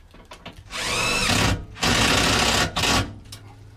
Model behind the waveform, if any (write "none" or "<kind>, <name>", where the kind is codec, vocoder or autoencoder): none